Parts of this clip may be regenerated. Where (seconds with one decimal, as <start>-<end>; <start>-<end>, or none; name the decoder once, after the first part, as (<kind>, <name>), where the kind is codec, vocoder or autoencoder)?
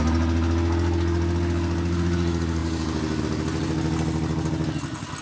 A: none